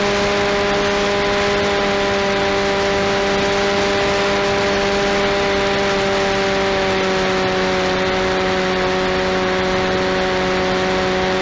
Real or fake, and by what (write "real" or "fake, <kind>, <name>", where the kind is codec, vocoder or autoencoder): real